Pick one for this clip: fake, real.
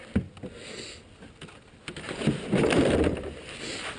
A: real